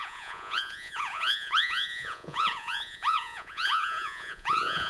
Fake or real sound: fake